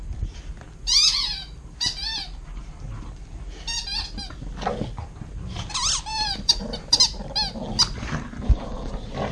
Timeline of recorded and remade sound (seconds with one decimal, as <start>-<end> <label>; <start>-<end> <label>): 0.0-6.1 recorded; 6.1-7.0 remade; 7.0-9.3 recorded